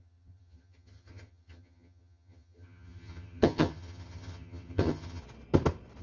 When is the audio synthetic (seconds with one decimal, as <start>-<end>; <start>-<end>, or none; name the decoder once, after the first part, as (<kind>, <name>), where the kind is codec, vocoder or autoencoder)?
0.0-5.2 (vocoder, HiFi-GAN)

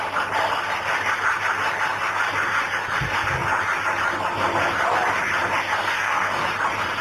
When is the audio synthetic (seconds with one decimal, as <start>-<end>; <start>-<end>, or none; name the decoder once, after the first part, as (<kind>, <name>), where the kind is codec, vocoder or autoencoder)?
5.8-6.4 (codec, SNAC)

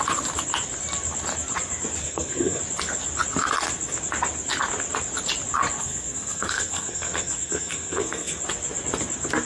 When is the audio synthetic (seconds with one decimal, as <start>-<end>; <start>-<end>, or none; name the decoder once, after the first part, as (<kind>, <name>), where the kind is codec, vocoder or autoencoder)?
2.0-2.6 (codec, SNAC); 5.8-8.4

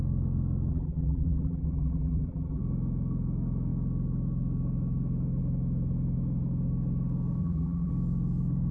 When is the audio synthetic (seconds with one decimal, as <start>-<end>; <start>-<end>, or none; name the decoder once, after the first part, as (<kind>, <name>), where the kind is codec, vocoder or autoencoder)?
0.7-2.6 (vocoder, BigVGAN v2); 7.4-7.9

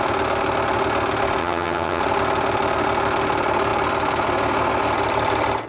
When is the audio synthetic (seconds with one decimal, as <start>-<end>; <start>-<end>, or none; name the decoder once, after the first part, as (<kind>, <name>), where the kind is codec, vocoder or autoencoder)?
1.4-2.0 (vocoder, HiFi-GAN)

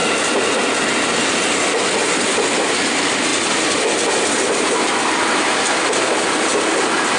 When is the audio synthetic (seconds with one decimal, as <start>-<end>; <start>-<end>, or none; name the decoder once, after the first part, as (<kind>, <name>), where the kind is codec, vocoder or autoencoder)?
none

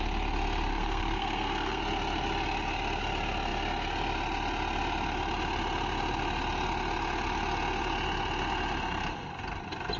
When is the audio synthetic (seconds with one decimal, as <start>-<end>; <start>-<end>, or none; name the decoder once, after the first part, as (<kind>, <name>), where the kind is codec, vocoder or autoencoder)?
0.7-1.8 (codec, SNAC)

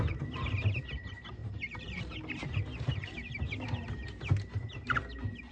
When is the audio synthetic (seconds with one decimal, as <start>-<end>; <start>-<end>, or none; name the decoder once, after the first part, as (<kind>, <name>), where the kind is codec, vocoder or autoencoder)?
1.4-2.0 (vocoder, BigVGAN v2)